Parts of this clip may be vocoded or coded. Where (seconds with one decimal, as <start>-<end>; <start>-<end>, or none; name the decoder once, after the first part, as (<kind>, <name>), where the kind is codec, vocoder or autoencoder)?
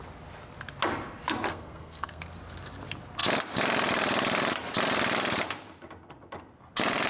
1.5-2.2 (codec, SNAC)